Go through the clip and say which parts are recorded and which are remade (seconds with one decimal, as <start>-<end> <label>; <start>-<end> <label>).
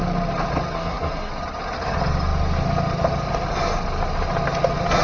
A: 0.0-0.7 recorded; 0.7-1.3 remade; 1.3-5.0 recorded